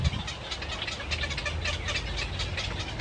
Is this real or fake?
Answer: real